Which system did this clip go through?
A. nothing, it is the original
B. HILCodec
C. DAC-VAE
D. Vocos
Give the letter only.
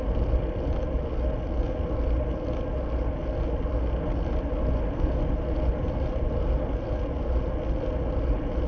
A